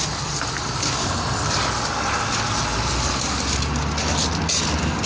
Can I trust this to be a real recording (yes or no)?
yes